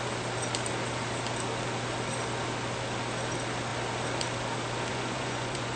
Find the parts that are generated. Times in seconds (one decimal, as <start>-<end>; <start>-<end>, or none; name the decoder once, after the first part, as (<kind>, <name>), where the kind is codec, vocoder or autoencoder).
4.9-5.8 (vocoder, Vocos)